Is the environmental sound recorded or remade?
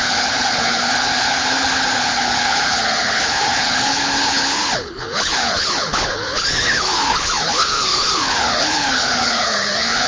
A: remade